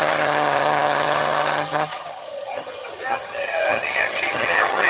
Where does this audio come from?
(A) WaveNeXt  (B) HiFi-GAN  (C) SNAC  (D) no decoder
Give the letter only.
B